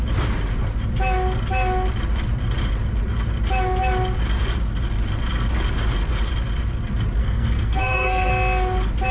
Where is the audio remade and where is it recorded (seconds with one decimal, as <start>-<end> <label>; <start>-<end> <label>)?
0.0-7.2 recorded; 7.2-8.3 remade; 8.3-9.1 recorded